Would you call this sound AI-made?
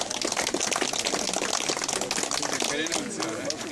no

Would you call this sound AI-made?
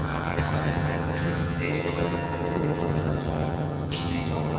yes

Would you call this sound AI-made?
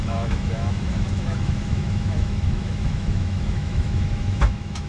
yes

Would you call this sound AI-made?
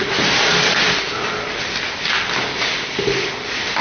no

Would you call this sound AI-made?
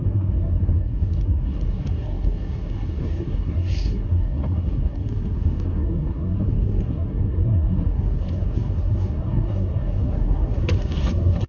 yes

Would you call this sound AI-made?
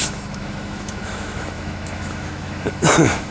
yes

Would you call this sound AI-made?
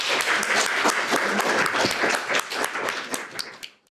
no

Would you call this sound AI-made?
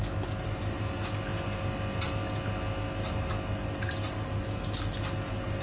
no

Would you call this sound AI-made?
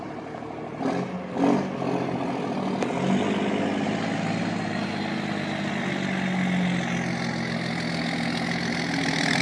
no